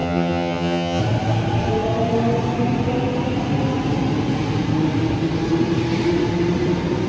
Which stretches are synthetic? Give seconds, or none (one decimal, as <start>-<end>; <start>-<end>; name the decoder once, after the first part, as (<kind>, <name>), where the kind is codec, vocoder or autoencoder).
0.0-1.0 (vocoder, HiFi-GAN)

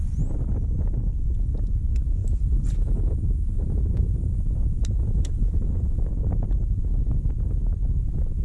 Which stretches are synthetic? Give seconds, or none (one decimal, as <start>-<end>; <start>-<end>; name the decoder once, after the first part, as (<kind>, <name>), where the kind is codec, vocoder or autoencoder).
2.2-7.0 (vocoder, BigVGAN v2)

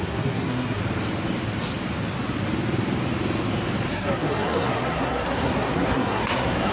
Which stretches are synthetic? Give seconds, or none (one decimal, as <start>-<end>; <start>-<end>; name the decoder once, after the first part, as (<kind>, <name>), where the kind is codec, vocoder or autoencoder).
0.0-0.8 (codec, SNAC); 3.9-6.7

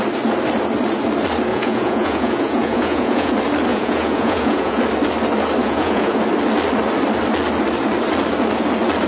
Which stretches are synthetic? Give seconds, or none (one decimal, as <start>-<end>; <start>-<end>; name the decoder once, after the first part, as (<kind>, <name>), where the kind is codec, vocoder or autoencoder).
1.5-3.3 (vocoder, Vocos); 3.7-4.8; 5.6-6.2

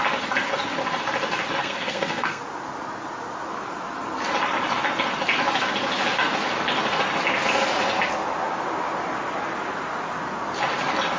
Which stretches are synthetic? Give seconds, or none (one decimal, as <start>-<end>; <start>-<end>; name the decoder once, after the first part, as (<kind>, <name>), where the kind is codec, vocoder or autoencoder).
1.6-2.4 (codec, SNAC)

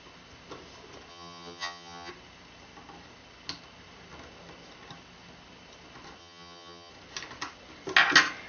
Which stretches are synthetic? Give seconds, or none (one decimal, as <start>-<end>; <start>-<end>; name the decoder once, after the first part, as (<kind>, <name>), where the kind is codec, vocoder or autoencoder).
1.1-2.1 (vocoder, HiFi-GAN); 6.2-6.9

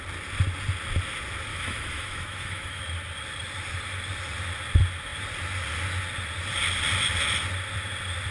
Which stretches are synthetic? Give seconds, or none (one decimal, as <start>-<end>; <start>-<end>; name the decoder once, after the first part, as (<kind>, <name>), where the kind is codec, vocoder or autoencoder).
1.5-2.8 (autoencoder, DAC-VAE)

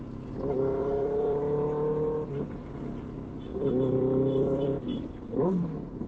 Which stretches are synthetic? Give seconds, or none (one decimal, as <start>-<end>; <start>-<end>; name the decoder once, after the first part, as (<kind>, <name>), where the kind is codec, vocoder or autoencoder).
0.8-1.4 (vocoder, BigVGAN v2); 3.5-6.1